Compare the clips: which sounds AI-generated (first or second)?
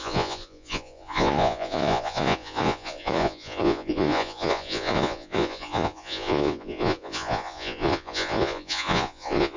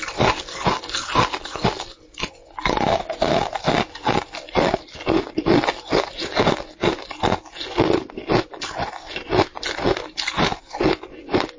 first